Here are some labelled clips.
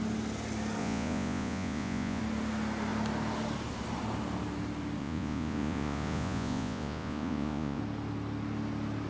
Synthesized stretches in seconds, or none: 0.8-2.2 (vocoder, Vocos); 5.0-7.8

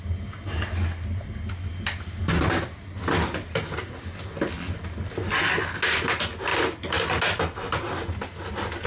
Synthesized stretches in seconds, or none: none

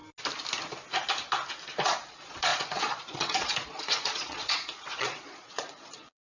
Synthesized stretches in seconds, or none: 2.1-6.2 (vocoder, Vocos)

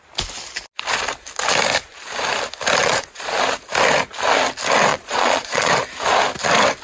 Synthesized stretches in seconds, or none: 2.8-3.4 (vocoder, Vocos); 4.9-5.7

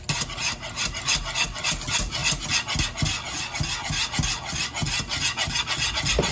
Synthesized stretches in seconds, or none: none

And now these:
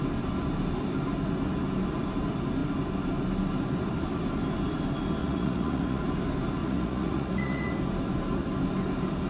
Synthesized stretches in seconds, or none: 5.2-6.0 (vocoder, Vocos); 6.6-7.7

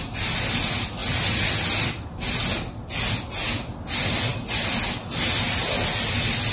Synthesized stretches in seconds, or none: none

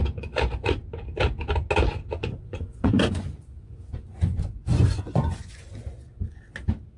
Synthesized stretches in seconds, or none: 0.0-0.7 (vocoder, Vocos); 2.2-6.4